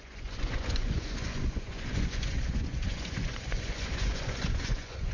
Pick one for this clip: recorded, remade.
remade